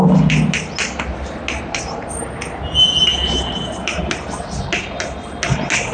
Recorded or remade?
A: recorded